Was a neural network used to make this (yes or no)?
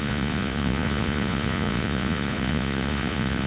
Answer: yes